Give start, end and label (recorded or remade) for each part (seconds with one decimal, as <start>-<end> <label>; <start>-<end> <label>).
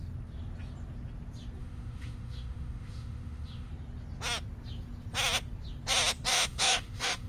0.0-1.6 recorded; 1.6-3.7 remade; 3.7-6.3 recorded; 6.3-7.3 remade